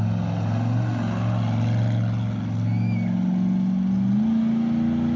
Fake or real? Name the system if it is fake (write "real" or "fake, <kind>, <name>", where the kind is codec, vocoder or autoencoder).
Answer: real